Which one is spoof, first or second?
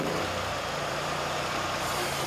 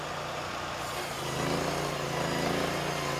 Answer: first